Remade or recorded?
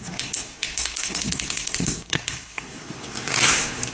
remade